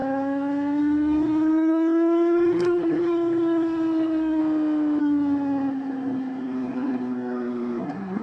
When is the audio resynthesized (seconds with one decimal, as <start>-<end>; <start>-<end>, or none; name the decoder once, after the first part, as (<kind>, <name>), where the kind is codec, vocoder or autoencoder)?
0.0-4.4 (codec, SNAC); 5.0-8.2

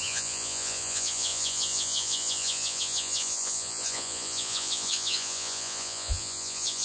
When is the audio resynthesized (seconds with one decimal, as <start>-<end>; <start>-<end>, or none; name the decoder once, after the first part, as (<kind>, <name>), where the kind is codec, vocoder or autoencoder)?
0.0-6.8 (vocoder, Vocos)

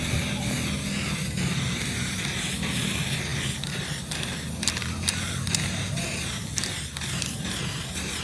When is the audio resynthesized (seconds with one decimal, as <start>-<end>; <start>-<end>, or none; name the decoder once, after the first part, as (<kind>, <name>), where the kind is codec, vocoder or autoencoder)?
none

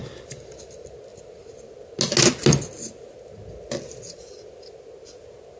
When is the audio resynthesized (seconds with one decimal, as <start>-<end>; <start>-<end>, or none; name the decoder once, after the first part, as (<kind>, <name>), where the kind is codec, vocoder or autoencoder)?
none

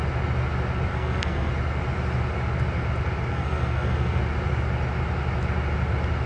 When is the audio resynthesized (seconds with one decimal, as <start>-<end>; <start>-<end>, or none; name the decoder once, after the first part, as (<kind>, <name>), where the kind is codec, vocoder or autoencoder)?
0.9-1.5 (codec, SNAC); 3.3-4.2

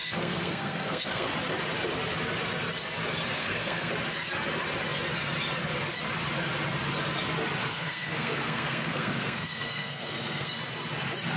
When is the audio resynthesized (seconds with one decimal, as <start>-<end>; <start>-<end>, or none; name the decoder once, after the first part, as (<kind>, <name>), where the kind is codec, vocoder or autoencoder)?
0.0-1.3 (codec, SNAC); 3.4-3.9; 7.6-10.6

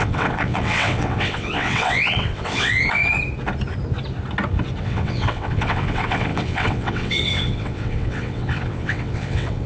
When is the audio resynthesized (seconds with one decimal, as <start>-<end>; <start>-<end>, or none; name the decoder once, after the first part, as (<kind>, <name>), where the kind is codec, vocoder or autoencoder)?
0.0-3.0 (vocoder, WaveNeXt); 4.8-9.7